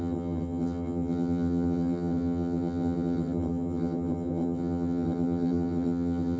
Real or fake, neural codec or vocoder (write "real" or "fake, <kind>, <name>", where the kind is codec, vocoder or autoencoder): fake, vocoder, HiFi-GAN